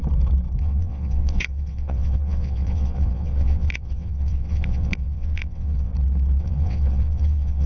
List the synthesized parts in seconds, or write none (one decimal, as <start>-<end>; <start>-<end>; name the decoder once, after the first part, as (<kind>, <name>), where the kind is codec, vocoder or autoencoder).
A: 0.6-5.9 (vocoder, WaveNeXt); 6.4-7.7